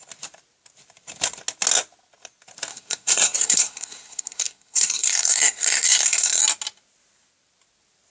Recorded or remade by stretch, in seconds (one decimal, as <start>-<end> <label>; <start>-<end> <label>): 0.0-2.7 recorded; 2.7-6.4 remade; 6.4-8.1 recorded